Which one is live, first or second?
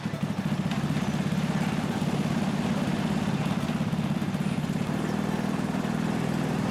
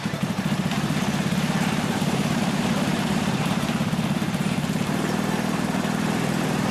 first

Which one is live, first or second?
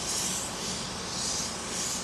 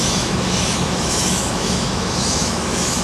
first